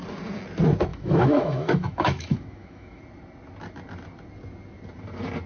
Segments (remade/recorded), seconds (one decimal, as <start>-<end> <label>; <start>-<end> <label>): 0.0-0.9 recorded; 0.9-3.0 remade; 3.0-5.5 recorded